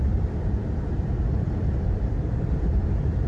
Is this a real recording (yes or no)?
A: no